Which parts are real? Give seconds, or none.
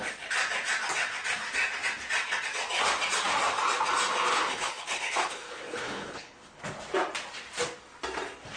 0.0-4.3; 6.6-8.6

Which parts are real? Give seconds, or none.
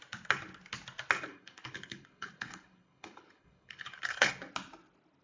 0.0-1.3; 4.3-5.2